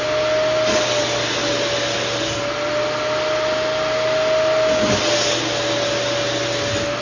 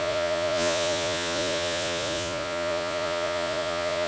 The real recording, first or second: first